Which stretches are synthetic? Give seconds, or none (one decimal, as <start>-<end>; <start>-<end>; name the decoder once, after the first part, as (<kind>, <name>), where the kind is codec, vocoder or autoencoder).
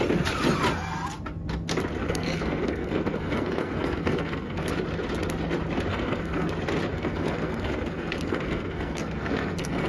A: 2.0-4.7 (codec, SNAC); 5.9-6.5; 6.9-9.9